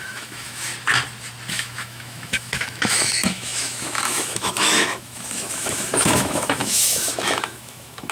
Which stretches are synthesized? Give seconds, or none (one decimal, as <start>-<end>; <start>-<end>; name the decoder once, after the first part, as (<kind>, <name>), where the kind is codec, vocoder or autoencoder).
0.0-0.7 (autoencoder, DAC-VAE); 1.5-8.1